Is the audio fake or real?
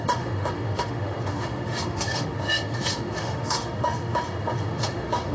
fake